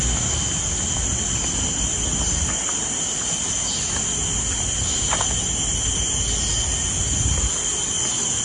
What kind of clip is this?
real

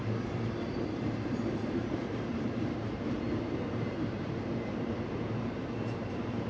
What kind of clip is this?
fake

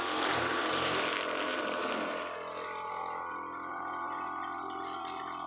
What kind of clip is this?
fake